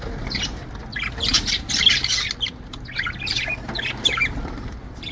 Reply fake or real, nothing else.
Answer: real